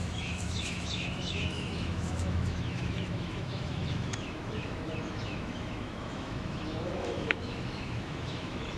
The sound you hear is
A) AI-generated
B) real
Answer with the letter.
A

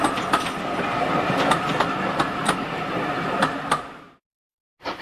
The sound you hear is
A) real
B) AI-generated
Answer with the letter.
A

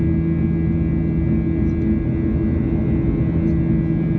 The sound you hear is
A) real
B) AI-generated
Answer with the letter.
A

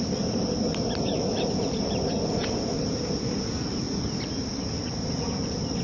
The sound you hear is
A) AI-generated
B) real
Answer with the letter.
B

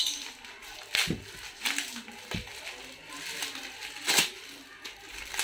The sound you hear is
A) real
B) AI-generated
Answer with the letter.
A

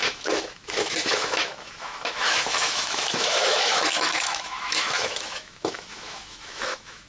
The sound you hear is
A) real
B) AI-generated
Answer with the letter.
B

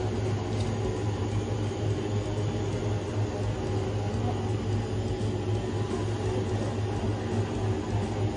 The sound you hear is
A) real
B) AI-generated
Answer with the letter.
A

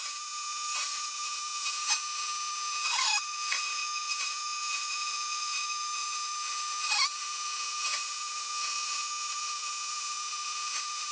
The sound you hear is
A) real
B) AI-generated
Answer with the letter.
B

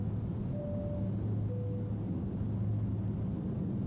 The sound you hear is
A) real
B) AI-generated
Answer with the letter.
A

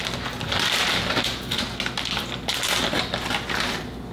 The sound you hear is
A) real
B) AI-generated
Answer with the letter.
A